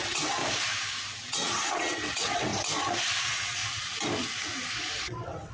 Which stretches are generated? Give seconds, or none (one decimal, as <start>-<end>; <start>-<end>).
0.0-0.4; 1.3-2.5; 3.2-3.6; 5.0-5.5